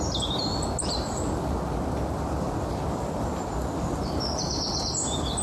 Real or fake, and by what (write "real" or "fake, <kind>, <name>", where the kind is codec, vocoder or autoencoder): real